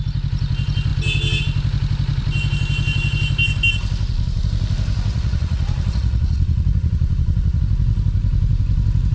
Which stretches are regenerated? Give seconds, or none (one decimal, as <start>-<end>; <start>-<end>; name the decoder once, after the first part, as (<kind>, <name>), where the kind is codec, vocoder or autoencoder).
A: 5.1-7.6 (vocoder, Vocos)